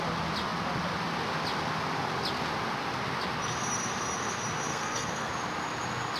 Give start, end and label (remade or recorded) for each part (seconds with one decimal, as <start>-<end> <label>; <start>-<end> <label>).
0.0-4.7 recorded; 4.7-5.3 remade; 5.3-6.2 recorded

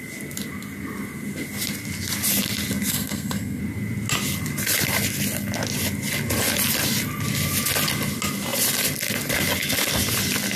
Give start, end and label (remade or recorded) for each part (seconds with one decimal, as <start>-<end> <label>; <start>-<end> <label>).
0.0-2.9 recorded; 2.9-3.6 remade; 3.6-10.6 recorded

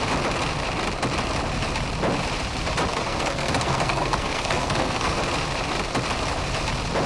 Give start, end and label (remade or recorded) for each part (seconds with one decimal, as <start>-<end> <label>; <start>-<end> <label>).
0.0-2.9 recorded; 2.9-5.2 remade; 5.2-7.1 recorded

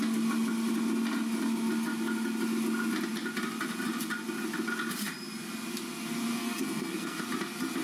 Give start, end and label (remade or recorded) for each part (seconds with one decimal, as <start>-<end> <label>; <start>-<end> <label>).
0.0-6.4 recorded; 6.4-7.2 remade; 7.2-7.8 recorded

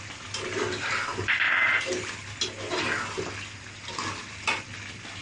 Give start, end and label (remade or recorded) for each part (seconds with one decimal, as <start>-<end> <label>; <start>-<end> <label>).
0.0-5.2 recorded